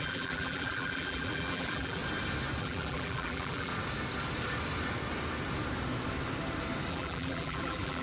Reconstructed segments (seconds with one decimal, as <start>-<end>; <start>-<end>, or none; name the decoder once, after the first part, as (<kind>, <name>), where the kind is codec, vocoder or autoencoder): 0.0-2.0 (vocoder, BigVGAN v2); 2.6-3.7; 6.9-8.0